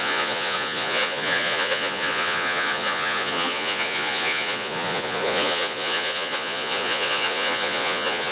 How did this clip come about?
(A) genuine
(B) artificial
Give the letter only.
B